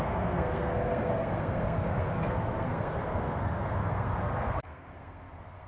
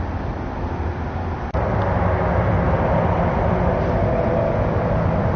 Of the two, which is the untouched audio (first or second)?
second